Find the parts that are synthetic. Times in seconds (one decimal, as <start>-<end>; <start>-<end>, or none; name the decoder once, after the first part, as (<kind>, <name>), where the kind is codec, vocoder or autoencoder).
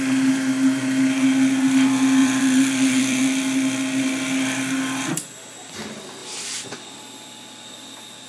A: 2.2-3.2 (vocoder, BigVGAN v2); 6.2-7.0